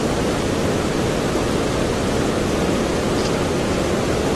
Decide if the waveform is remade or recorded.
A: recorded